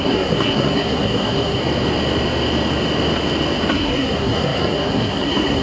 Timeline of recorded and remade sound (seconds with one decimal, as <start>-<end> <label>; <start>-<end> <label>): 0.0-1.6 remade; 1.6-3.7 recorded; 3.7-5.6 remade